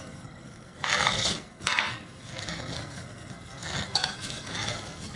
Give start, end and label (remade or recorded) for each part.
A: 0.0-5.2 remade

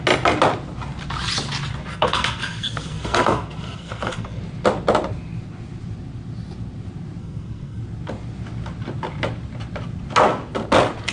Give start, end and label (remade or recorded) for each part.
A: 0.0-1.9 recorded; 1.9-4.4 remade; 4.4-7.2 recorded; 7.2-7.8 remade; 7.8-11.1 recorded

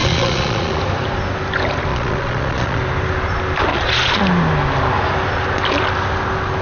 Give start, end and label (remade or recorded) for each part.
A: 0.0-0.8 remade; 0.8-1.9 recorded; 1.9-2.8 remade; 2.8-3.7 recorded; 3.7-4.2 remade; 4.2-6.6 recorded

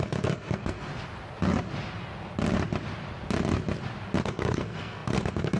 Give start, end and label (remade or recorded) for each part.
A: 0.0-0.9 remade; 0.9-4.2 recorded; 4.2-5.6 remade

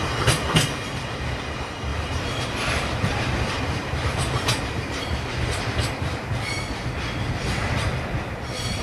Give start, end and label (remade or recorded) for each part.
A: 0.0-1.9 recorded; 1.9-6.9 remade; 6.9-8.8 recorded